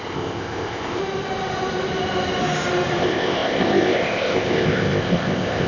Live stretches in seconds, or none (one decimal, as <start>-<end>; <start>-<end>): 1.0-3.0